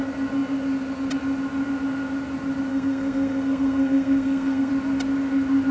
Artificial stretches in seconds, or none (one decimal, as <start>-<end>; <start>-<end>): 2.7-4.7